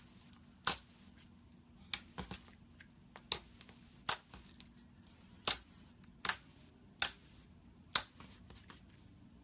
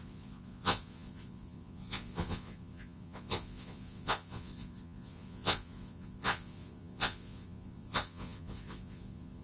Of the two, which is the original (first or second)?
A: first